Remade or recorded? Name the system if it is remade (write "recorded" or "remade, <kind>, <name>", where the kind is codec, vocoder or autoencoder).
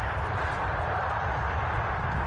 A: recorded